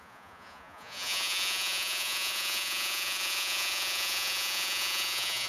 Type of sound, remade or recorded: remade